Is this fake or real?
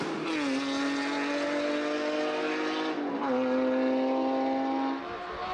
real